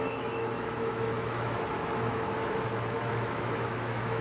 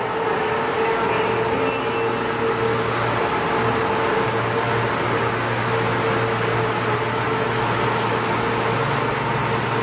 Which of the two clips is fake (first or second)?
first